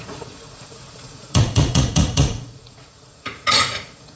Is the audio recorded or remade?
remade